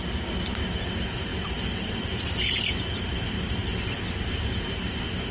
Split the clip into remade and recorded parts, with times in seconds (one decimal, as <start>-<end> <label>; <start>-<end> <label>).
0.0-5.3 recorded